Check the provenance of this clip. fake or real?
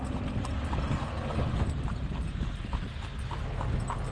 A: real